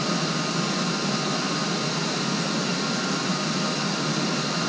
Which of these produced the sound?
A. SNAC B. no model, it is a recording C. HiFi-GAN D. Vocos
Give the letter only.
B